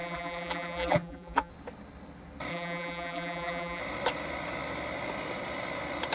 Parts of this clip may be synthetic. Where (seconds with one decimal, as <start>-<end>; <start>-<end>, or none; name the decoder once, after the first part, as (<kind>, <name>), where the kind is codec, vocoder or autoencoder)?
0.0-1.5 (vocoder, BigVGAN v2); 2.5-3.8